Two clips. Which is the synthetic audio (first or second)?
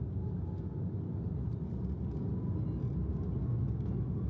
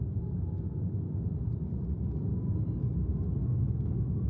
second